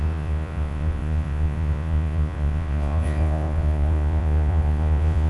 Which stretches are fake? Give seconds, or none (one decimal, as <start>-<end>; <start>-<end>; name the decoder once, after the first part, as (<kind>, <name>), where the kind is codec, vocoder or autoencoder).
0.0-5.3 (vocoder, Vocos)

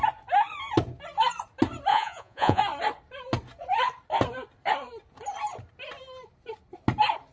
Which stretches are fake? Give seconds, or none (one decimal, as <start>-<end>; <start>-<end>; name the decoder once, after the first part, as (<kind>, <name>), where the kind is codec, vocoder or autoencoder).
1.9-2.6 (vocoder, Vocos)

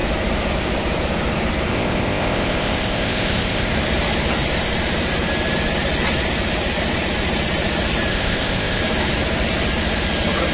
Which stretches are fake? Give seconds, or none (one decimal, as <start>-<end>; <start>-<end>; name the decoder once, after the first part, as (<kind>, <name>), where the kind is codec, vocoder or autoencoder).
1.7-3.7 (codec, ZipCodec); 8.1-8.8

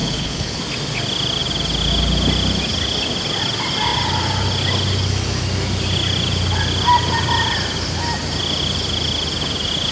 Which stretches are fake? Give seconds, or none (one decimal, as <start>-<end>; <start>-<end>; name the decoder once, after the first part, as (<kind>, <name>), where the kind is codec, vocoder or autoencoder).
0.0-0.6 (codec, HILCodec)

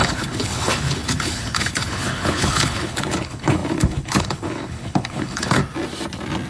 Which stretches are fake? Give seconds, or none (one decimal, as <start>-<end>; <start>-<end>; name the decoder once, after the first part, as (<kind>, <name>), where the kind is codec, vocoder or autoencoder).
0.0-5.6 (codec, HILCodec)